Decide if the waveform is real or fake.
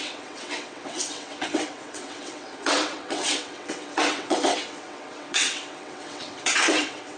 fake